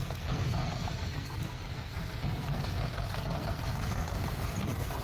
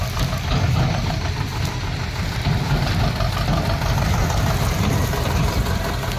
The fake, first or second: first